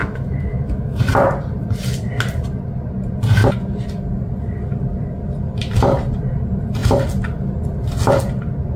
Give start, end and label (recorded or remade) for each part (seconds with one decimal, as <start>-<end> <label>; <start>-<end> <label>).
0.0-1.0 remade; 1.0-8.8 recorded